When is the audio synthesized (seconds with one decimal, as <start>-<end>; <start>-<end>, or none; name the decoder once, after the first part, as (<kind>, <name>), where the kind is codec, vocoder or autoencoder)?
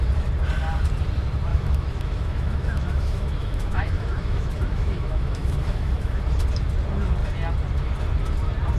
1.5-6.2 (autoencoder, DAC-VAE)